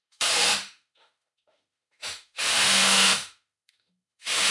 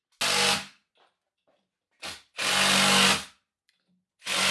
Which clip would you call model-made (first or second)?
first